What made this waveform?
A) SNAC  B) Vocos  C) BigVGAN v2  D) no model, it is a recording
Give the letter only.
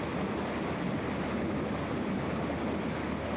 D